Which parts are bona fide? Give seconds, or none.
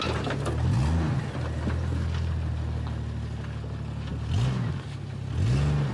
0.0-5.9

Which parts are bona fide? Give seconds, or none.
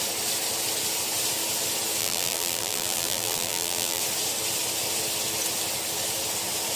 0.0-2.0; 4.0-6.8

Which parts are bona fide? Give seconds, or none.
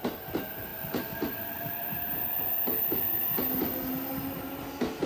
0.0-5.1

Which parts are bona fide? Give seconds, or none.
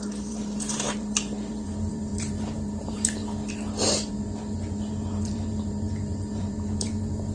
3.2-4.1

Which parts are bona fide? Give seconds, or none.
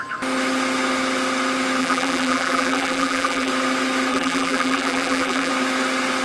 0.0-1.8; 3.5-4.1; 5.5-6.2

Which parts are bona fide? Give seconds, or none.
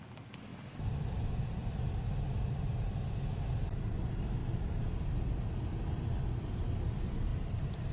0.0-0.5; 1.9-7.3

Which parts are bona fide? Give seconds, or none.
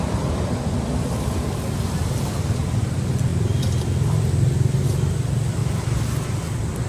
0.0-5.6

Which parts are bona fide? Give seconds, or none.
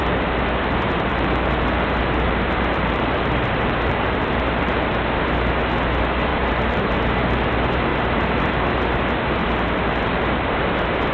0.0-1.1; 4.9-6.3; 6.9-7.9; 8.7-9.4; 10.1-11.1